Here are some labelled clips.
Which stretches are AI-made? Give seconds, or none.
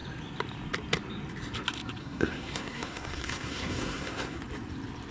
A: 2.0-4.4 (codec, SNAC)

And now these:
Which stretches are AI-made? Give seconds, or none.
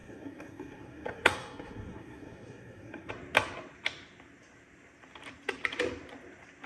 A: 0.0-3.1 (codec, SNAC)